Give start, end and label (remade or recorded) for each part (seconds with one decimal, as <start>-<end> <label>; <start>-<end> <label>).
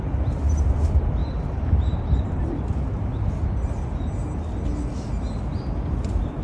0.0-1.2 recorded; 1.2-2.6 remade; 2.6-6.4 recorded